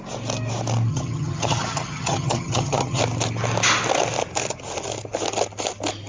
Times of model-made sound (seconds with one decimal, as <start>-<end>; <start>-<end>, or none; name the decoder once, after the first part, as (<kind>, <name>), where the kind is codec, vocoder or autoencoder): 0.9-3.0 (vocoder, HiFi-GAN)